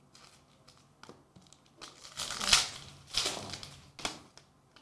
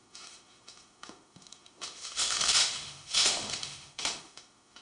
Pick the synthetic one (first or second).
second